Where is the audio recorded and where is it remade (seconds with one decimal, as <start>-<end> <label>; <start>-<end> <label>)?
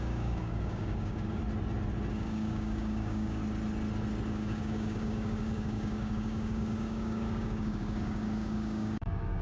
0.0-1.4 remade; 1.4-2.1 recorded; 2.1-3.4 remade; 3.4-4.3 recorded; 4.3-9.4 remade